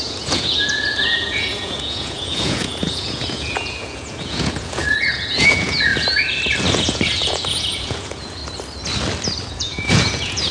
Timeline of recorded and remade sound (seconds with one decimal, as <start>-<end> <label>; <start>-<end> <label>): 0.0-5.9 remade; 5.9-6.7 recorded; 6.7-8.4 remade; 8.4-9.5 recorded; 9.5-10.5 remade